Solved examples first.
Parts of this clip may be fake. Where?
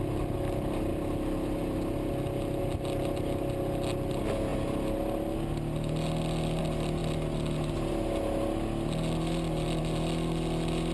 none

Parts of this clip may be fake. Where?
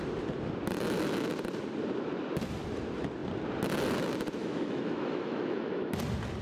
4.4-5.9 (autoencoder, DAC-VAE)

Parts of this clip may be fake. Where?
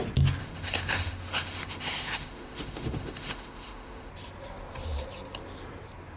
0.4-4.1 (autoencoder, DAC-VAE)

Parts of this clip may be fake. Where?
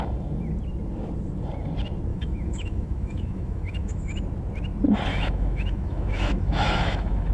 2.1-4.2 (autoencoder, DAC-VAE); 5.1-7.3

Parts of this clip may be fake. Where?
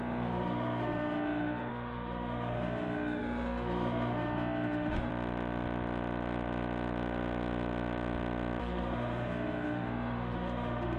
0.0-5.1 (autoencoder, DAC-VAE); 8.6-11.0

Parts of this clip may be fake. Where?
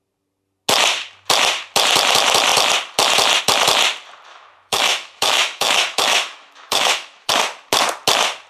4.3-7.3 (autoencoder, DAC-VAE)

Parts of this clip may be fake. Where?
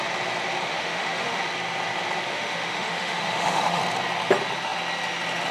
0.7-1.4 (autoencoder, DAC-VAE); 2.3-3.8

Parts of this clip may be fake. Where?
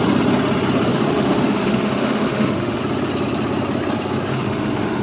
0.9-2.8 (autoencoder, DAC-VAE); 4.3-5.0